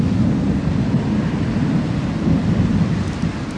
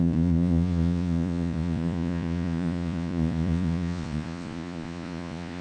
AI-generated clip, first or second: second